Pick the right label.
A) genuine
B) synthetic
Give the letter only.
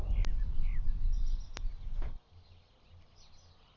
A